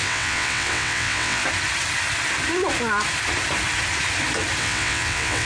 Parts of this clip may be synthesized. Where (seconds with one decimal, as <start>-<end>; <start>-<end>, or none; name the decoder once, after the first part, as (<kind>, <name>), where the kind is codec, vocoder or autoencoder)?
0.0-1.4 (vocoder, WaveNeXt); 4.6-5.4